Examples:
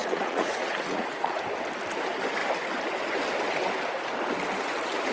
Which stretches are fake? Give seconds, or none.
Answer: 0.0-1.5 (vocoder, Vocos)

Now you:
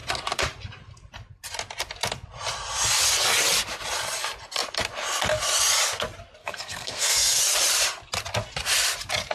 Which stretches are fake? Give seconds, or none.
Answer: 6.4-7.4 (codec, SNAC)

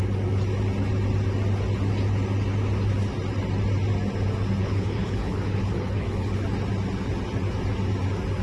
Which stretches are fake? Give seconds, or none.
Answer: 4.6-6.4 (codec, HILCodec)

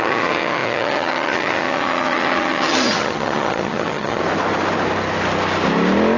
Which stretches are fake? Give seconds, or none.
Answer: 0.0-4.2 (vocoder, HiFi-GAN)

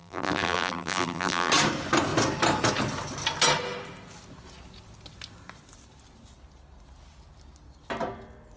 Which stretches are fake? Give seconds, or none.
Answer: 0.0-1.5 (vocoder, BigVGAN v2)

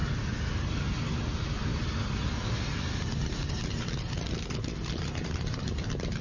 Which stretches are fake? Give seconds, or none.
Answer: 1.7-3.4 (vocoder, BigVGAN v2)

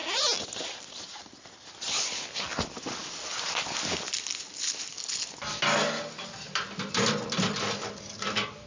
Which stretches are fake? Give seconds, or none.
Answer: none